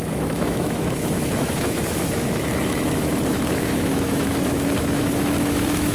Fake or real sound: fake